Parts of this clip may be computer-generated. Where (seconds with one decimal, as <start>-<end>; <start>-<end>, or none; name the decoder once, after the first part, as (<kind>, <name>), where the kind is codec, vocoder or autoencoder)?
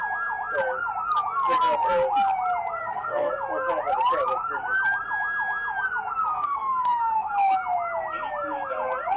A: 2.8-3.3 (codec, SNAC); 6.3-7.3